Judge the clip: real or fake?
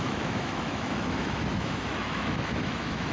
fake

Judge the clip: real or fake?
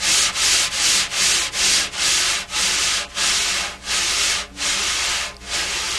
real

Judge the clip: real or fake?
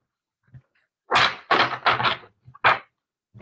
real